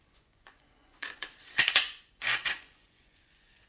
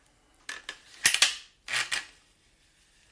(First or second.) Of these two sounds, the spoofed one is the first